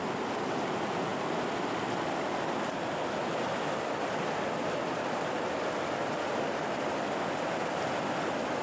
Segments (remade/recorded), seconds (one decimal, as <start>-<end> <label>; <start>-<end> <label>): 0.0-8.6 recorded